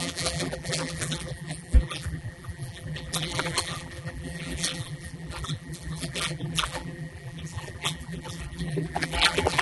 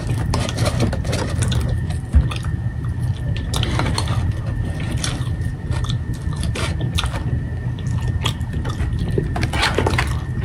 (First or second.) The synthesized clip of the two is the first